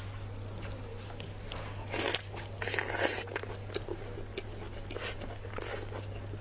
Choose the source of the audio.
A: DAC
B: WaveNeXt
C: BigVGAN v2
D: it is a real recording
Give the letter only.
D